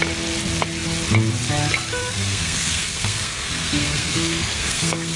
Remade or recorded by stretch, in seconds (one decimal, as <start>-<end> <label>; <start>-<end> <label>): 0.0-2.0 recorded; 2.0-5.2 remade